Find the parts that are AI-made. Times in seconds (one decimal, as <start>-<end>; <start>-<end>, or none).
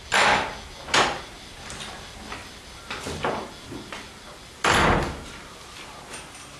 none